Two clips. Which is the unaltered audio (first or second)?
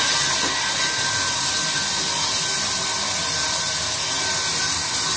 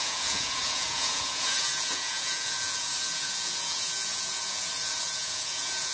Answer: first